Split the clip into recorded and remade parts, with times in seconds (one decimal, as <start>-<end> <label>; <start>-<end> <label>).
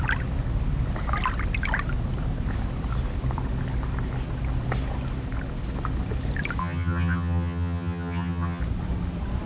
0.0-6.6 recorded; 6.6-8.6 remade; 8.6-9.5 recorded